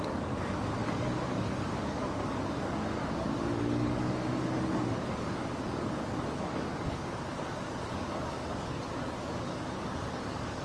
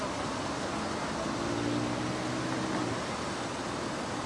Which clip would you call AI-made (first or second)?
first